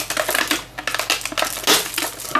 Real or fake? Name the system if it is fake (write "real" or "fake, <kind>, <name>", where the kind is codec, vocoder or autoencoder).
real